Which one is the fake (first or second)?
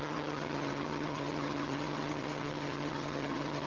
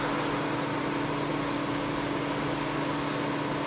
first